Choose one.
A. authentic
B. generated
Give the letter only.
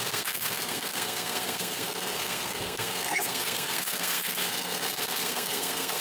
B